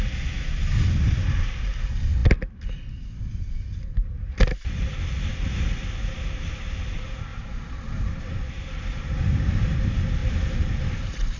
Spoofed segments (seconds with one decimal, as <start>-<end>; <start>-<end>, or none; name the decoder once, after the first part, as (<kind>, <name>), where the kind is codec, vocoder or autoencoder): 7.3-8.3 (vocoder, BigVGAN v2); 10.2-11.4